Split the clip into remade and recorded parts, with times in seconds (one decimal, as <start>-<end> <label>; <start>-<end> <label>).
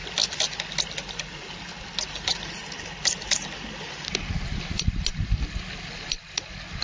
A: 0.0-6.8 recorded